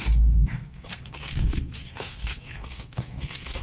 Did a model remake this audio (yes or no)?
yes